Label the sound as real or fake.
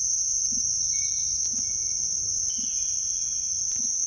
real